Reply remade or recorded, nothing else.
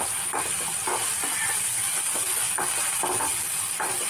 recorded